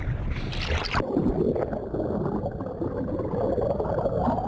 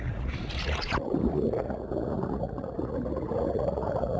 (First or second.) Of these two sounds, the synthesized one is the second